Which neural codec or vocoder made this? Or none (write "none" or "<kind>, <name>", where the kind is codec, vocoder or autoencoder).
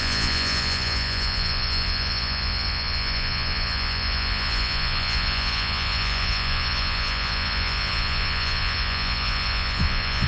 vocoder, Vocos